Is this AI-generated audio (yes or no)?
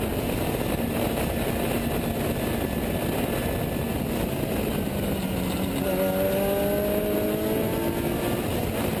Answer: no